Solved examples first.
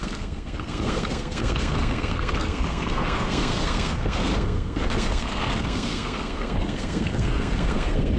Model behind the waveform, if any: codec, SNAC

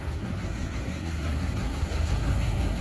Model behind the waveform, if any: codec, SNAC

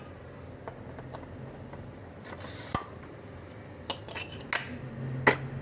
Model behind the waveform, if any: none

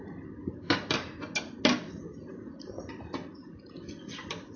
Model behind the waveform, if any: none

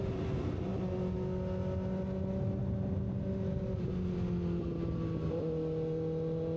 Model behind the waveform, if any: none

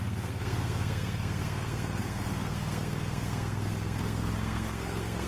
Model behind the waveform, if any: codec, SNAC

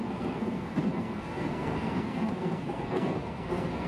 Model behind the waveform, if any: codec, SNAC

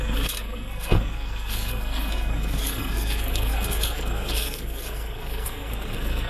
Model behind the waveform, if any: codec, SNAC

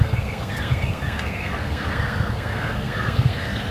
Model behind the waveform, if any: codec, SNAC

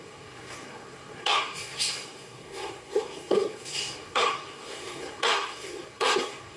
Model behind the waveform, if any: codec, SNAC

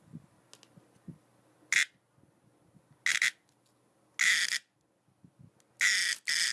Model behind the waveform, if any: none